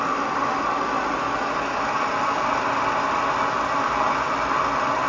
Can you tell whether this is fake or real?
real